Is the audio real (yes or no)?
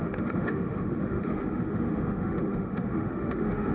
no